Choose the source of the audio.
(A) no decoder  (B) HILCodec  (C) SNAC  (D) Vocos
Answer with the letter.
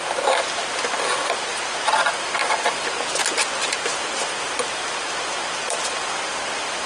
A